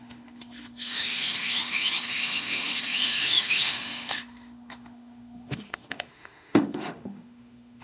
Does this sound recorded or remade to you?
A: remade